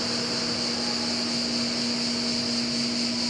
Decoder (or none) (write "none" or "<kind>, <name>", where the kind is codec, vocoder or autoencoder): none